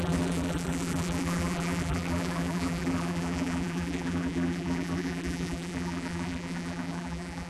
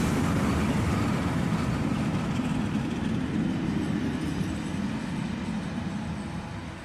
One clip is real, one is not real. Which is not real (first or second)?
first